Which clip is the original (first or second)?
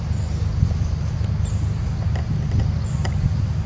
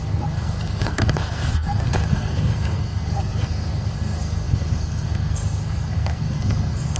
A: first